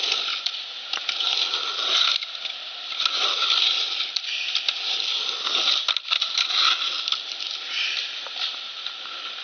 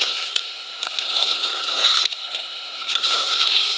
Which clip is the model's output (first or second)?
second